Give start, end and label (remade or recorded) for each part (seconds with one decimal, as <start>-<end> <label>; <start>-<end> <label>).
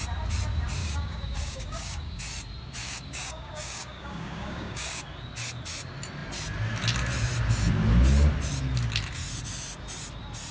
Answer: 0.0-0.8 recorded; 0.8-2.2 remade; 2.2-2.8 recorded; 2.8-5.0 remade; 5.0-10.5 recorded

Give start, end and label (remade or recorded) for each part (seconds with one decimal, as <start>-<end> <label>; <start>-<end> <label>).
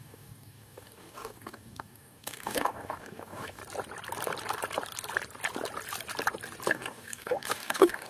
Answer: 0.0-3.6 remade; 3.6-6.7 recorded; 6.7-8.1 remade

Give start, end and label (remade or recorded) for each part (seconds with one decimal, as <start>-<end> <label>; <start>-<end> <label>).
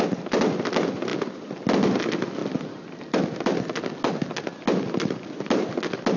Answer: 0.0-6.2 recorded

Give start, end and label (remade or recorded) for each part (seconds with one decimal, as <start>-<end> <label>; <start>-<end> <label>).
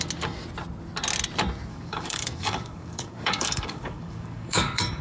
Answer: 0.0-1.7 recorded; 1.7-5.0 remade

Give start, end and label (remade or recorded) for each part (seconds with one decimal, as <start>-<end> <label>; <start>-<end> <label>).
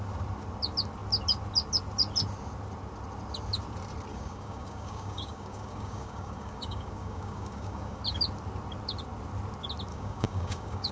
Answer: 0.0-4.1 recorded; 4.1-8.0 remade; 8.0-9.9 recorded; 9.9-10.9 remade